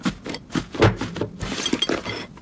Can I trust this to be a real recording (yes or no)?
yes